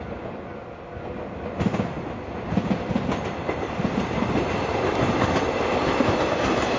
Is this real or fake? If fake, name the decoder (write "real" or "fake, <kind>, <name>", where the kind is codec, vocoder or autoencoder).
real